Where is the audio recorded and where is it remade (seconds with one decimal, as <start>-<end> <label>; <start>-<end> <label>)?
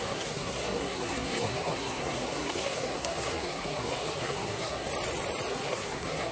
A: 0.0-4.9 remade; 4.9-5.5 recorded; 5.5-6.3 remade